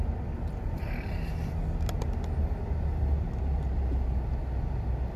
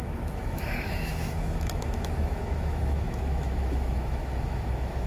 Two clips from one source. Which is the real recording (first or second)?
first